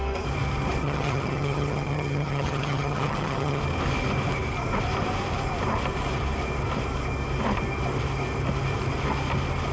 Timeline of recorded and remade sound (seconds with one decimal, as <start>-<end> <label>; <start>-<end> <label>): 0.0-0.8 recorded; 0.8-3.6 remade; 3.6-9.7 recorded